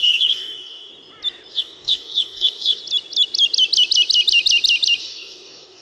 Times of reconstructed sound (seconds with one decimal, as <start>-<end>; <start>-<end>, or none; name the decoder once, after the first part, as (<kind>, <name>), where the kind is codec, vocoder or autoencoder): 0.0-0.9 (codec, DAC); 1.5-2.8; 5.0-5.8